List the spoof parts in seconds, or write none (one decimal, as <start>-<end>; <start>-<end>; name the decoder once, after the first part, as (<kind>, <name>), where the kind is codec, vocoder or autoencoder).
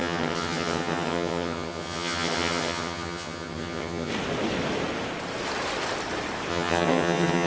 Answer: 0.0-4.1 (vocoder, HiFi-GAN); 6.5-7.5